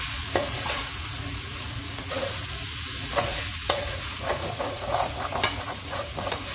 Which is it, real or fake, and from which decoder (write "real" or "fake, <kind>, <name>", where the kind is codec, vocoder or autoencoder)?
fake, vocoder, Vocos